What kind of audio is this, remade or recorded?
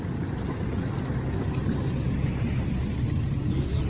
recorded